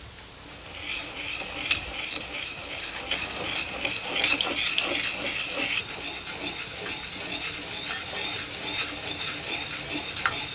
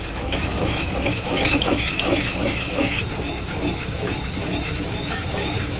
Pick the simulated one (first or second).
second